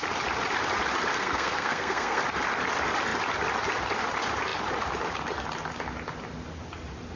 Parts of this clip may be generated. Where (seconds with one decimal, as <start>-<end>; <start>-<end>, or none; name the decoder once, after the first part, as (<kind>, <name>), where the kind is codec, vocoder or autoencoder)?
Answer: 1.1-2.2 (codec, SNAC)